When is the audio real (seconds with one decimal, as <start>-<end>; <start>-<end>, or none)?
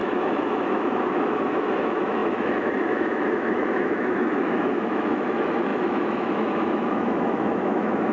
none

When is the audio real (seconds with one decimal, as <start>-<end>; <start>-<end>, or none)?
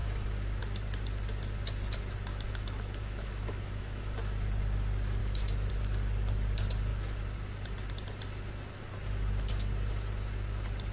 0.0-2.3; 4.1-5.2; 5.7-10.9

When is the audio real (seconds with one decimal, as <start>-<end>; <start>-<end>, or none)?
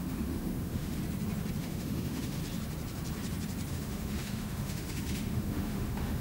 1.0-1.6; 2.4-3.7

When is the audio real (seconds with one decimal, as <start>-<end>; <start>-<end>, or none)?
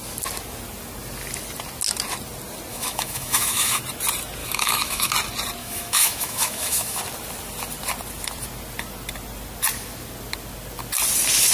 0.0-2.7; 3.8-4.4; 5.1-5.6; 7.0-11.5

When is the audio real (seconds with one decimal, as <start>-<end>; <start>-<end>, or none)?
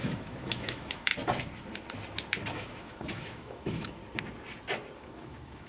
1.1-2.5; 4.0-5.0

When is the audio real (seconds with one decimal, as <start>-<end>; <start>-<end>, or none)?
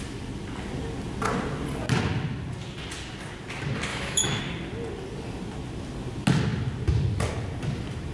0.0-3.9; 4.4-8.1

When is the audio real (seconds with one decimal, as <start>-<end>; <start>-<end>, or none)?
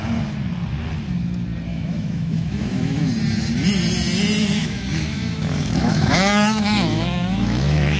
0.0-1.7; 3.1-4.6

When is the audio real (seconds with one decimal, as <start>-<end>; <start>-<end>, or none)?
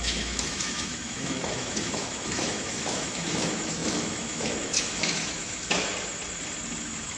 5.9-6.8